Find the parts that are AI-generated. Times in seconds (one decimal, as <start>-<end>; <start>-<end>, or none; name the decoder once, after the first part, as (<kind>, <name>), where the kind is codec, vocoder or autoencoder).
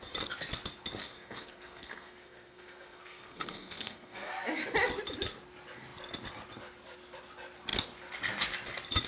1.0-4.3 (codec, SNAC)